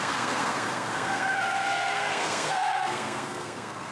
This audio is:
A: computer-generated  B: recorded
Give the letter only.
A